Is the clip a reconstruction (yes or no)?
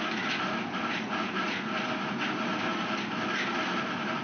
no